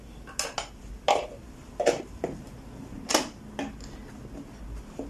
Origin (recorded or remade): recorded